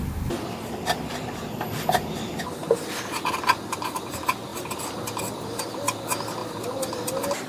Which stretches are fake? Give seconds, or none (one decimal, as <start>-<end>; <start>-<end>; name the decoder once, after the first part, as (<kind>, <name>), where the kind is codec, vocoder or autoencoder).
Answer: none